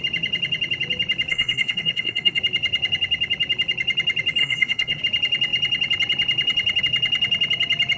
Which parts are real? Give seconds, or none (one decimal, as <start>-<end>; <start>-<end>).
0.0-1.3; 2.4-4.4; 5.0-8.0